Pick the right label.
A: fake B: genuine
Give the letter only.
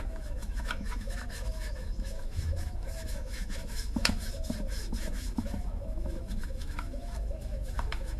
A